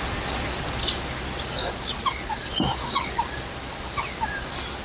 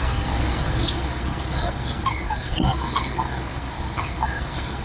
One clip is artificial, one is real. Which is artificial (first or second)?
second